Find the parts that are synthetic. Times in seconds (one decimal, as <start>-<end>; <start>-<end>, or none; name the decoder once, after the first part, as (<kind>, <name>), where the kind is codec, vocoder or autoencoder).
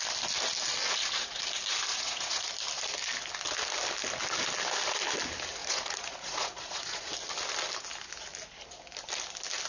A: 1.9-2.5 (vocoder, Vocos); 5.6-7.1